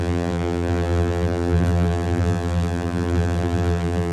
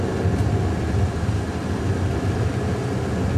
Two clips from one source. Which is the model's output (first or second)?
first